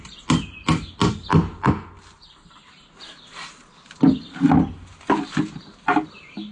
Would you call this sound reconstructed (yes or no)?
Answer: no